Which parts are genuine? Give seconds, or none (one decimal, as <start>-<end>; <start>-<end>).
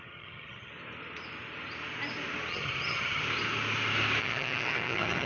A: 0.7-2.5; 3.2-4.2